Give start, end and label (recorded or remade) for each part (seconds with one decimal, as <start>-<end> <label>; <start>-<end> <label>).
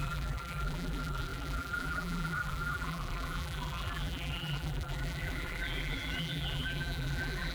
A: 0.0-7.5 remade